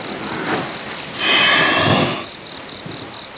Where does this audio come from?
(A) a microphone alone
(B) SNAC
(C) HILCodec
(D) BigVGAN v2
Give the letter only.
A